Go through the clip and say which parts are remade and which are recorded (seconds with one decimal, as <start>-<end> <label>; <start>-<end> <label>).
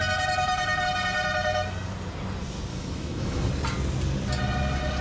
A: 0.0-2.7 recorded; 2.7-3.5 remade; 3.5-5.0 recorded